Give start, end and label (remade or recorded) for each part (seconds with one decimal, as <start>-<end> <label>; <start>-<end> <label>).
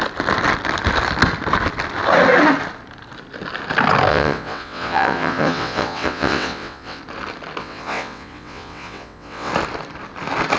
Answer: 0.0-4.1 recorded; 4.1-7.0 remade; 7.0-7.6 recorded; 7.6-9.5 remade; 9.5-10.6 recorded